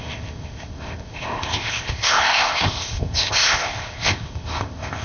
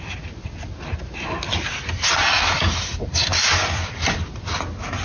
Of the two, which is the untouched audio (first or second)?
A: second